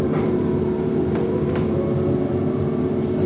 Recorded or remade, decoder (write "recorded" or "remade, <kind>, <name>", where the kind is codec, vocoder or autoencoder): remade, vocoder, BigVGAN v2